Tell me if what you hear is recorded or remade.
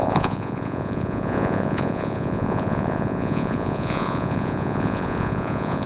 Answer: remade